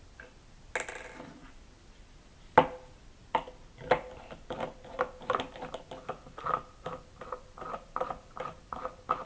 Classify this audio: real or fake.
real